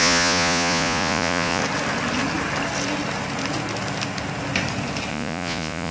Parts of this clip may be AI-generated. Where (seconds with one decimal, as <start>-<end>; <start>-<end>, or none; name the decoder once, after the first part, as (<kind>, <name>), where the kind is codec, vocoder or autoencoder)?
0.0-1.6 (vocoder, Vocos); 5.1-5.9